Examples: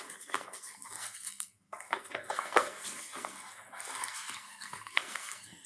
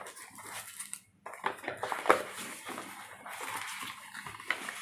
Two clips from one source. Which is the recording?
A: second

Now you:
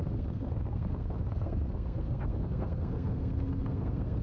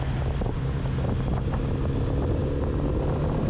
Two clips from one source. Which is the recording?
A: second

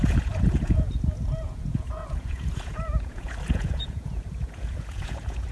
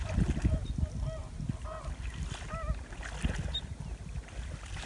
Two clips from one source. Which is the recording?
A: second